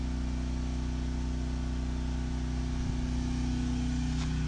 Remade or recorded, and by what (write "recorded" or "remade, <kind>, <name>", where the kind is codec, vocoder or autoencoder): recorded